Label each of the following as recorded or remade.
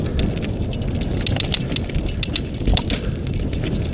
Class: recorded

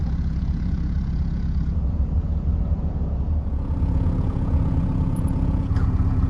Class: remade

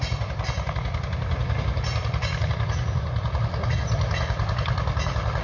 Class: recorded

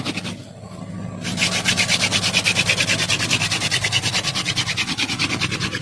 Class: recorded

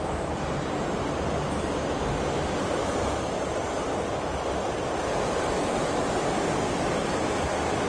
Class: recorded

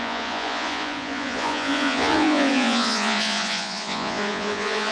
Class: remade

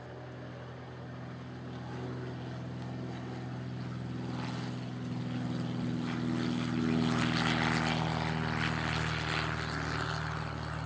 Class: recorded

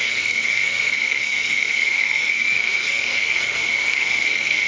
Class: remade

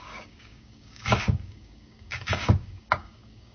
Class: remade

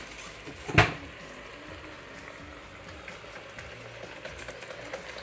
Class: recorded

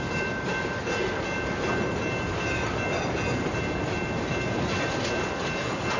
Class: recorded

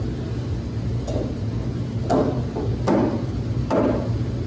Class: recorded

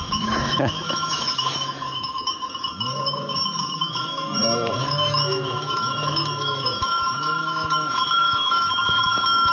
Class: remade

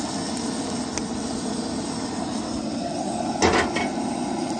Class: recorded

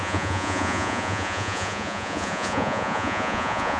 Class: remade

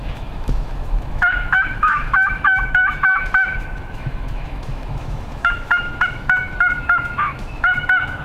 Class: remade